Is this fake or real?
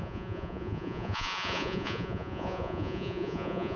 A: fake